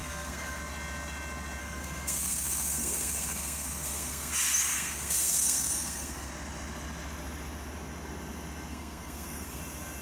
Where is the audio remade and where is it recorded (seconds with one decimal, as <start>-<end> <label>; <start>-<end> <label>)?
0.0-0.6 remade; 0.6-1.6 recorded; 1.6-4.3 remade; 4.3-4.7 recorded; 4.7-6.3 remade; 6.3-8.7 recorded; 8.7-9.6 remade; 9.6-10.0 recorded